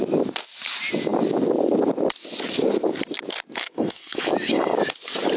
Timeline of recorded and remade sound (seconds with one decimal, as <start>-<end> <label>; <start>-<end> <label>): 0.0-3.6 recorded; 3.6-4.3 remade; 4.3-5.4 recorded